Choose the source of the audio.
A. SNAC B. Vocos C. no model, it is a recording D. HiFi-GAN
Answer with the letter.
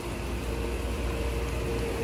C